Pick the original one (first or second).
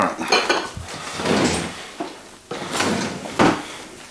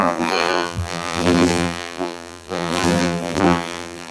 first